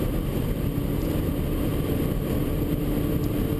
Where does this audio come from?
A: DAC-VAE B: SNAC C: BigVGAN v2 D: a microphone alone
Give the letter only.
D